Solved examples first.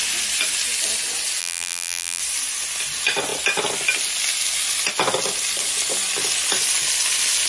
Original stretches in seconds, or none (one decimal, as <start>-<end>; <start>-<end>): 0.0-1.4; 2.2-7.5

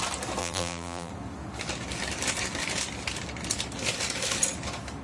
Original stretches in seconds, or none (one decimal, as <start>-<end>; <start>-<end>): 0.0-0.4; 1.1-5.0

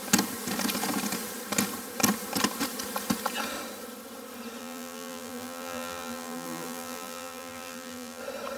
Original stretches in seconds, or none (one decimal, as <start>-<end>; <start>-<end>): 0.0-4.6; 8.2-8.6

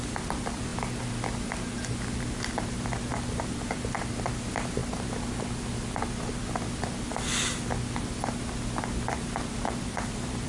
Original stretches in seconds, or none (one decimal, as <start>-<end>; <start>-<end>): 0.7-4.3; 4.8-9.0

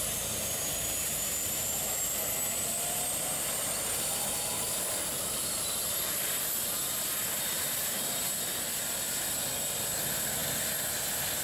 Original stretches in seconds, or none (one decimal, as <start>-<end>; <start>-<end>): 0.0-11.4